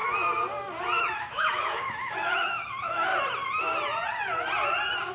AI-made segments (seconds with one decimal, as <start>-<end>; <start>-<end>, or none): 1.0-3.1